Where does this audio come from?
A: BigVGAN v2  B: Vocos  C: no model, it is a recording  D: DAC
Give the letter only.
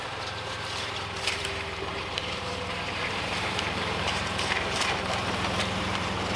A